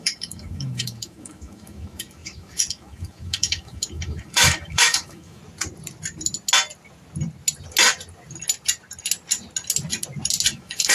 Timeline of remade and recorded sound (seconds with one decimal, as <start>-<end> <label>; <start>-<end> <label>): 0.0-5.4 remade; 5.4-10.5 recorded; 10.5-10.9 remade